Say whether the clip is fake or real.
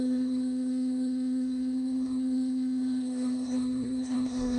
fake